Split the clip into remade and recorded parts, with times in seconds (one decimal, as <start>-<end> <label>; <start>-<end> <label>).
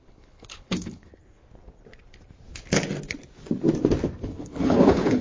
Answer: 0.0-1.1 remade; 1.1-4.2 recorded; 4.2-5.2 remade